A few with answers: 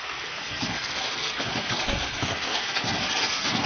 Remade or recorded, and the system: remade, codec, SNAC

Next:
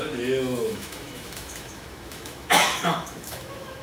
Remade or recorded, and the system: remade, autoencoder, DAC-VAE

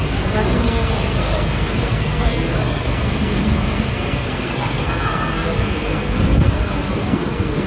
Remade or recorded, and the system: remade, codec, SNAC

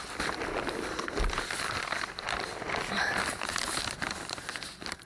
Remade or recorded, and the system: recorded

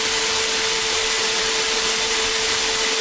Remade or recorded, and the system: recorded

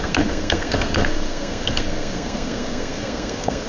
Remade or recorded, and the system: remade, codec, SNAC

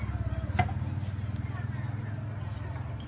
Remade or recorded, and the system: recorded